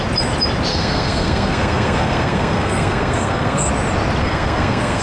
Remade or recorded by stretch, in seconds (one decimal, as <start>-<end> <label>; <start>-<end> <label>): 0.0-0.7 recorded; 0.7-3.7 remade; 3.7-4.2 recorded; 4.2-5.0 remade